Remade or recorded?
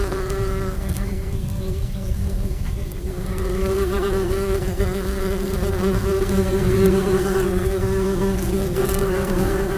remade